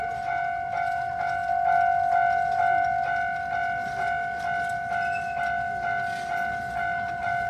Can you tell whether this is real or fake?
real